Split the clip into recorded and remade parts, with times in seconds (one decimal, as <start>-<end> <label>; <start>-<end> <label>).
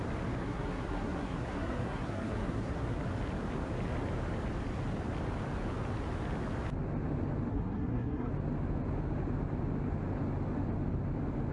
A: 0.0-0.4 recorded; 0.4-3.0 remade; 3.0-7.5 recorded; 7.5-8.3 remade; 8.3-11.5 recorded